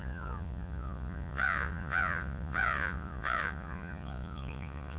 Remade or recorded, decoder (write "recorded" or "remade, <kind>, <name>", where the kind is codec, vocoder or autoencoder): remade, vocoder, Vocos